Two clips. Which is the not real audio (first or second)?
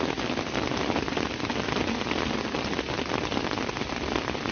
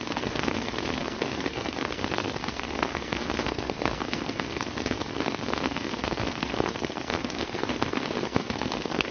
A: second